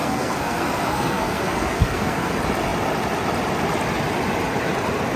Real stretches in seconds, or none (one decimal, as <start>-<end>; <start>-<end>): 2.3-5.2